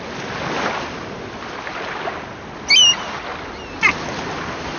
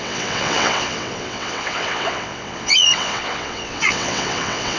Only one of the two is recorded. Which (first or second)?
first